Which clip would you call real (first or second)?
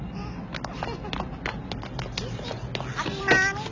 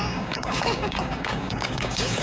first